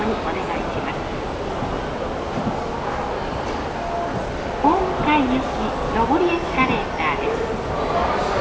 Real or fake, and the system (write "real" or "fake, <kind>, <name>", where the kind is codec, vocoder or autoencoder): real